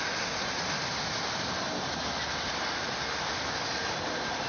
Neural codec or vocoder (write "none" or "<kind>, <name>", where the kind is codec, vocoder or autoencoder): none